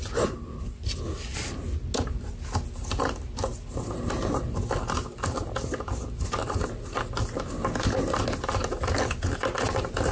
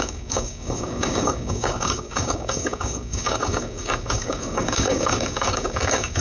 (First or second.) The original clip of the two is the first